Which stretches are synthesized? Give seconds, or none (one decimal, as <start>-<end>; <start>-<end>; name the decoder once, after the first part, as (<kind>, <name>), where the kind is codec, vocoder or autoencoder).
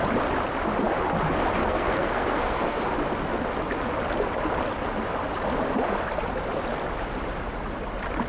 1.6-2.8 (codec, SNAC)